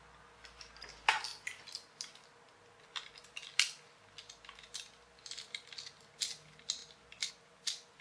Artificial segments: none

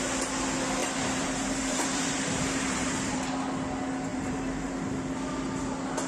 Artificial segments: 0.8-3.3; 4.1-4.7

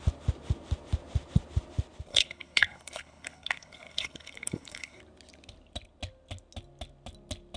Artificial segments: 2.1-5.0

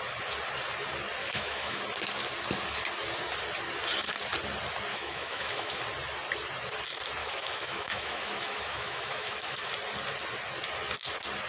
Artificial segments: 1.2-1.8; 4.9-5.8; 7.2-9.7

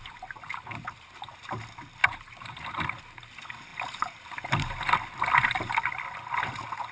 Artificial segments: 2.0-3.0